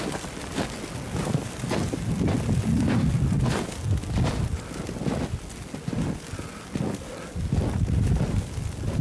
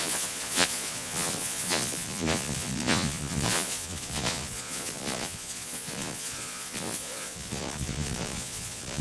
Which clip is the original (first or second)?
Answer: first